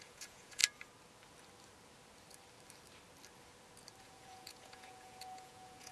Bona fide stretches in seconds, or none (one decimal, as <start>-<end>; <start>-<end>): 0.6-4.0